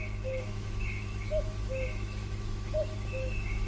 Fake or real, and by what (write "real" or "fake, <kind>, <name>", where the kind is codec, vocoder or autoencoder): fake, autoencoder, DAC-VAE